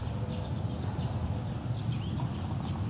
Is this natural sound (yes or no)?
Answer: yes